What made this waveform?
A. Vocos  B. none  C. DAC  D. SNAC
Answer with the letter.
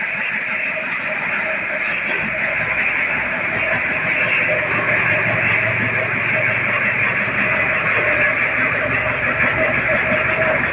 B